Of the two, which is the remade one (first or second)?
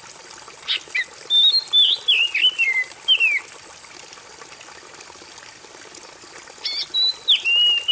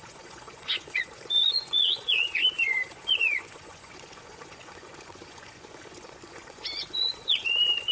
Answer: second